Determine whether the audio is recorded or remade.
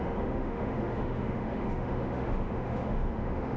remade